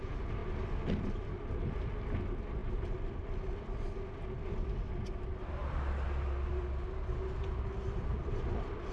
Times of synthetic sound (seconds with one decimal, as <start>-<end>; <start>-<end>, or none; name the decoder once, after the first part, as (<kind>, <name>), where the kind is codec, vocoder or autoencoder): none